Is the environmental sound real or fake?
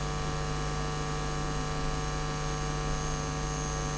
real